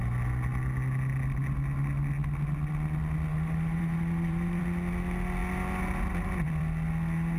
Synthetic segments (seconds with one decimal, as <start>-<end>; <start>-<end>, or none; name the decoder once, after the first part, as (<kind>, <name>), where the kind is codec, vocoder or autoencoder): 3.3-4.6 (vocoder, BigVGAN v2)